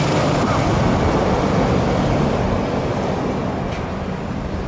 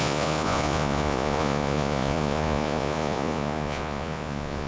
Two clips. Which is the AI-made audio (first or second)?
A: second